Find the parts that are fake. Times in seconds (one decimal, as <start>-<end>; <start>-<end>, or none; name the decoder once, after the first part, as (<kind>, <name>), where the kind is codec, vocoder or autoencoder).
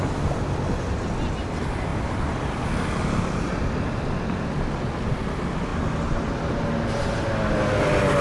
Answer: none